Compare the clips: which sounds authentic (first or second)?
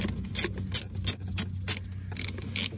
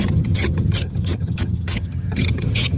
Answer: first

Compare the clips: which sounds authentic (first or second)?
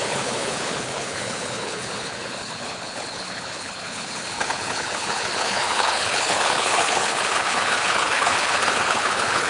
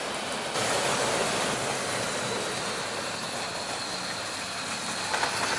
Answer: second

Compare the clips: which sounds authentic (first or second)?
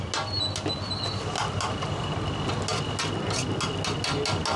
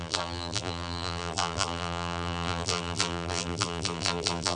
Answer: first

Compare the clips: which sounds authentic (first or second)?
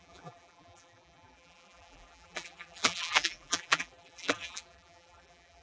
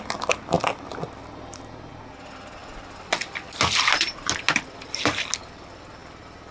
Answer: second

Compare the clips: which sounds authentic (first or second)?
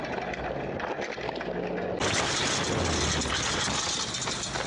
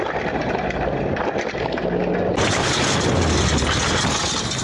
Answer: first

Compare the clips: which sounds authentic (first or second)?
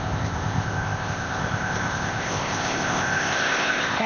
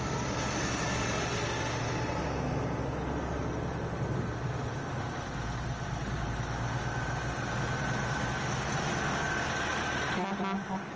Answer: second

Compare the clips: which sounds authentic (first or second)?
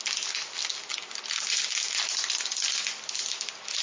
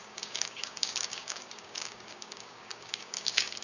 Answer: first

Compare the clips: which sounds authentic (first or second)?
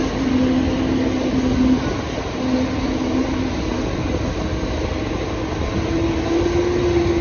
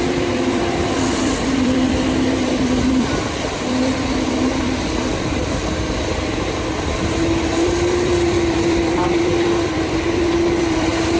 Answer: first